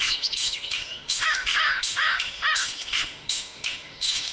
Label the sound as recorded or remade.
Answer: remade